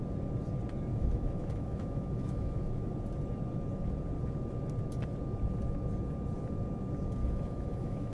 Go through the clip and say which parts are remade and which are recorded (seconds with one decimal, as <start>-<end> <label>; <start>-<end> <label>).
0.0-0.9 recorded; 0.9-2.9 remade; 2.9-7.2 recorded; 7.2-8.1 remade